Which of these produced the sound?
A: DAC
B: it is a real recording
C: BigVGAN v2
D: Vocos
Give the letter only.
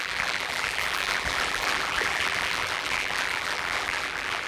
C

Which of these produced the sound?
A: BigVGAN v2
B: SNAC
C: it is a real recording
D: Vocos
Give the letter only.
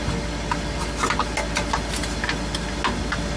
C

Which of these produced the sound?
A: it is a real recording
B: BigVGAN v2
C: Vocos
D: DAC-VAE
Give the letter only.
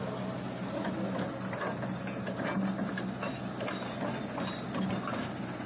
A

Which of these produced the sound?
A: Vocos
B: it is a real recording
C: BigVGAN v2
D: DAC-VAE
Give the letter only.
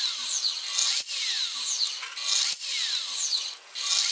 B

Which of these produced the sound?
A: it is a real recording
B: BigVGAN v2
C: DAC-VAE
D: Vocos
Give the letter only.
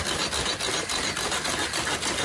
A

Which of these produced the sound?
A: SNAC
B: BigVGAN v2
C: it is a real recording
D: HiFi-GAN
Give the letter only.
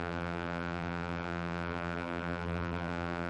B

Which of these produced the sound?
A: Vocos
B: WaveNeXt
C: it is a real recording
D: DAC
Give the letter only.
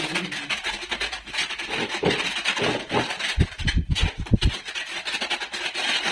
C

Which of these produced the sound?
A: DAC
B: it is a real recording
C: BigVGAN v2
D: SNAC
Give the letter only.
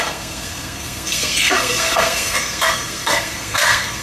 D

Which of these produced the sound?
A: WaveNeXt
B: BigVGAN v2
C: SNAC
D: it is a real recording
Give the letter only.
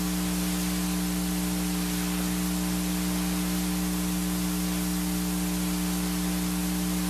D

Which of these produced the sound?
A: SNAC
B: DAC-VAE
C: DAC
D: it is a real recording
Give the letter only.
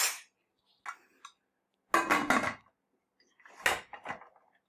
D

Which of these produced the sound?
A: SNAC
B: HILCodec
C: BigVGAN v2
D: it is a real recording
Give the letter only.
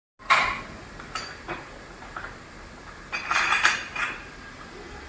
D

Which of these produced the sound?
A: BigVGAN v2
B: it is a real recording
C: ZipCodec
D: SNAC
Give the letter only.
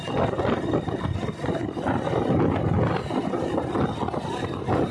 B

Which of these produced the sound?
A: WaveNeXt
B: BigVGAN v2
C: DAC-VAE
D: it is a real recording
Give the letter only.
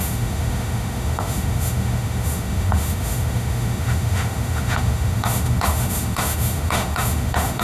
C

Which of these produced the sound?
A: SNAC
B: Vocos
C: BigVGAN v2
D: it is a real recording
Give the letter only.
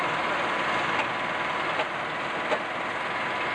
D